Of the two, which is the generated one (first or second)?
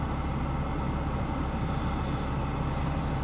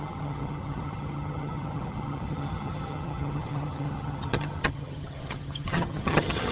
second